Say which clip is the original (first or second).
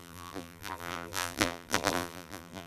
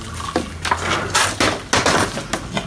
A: second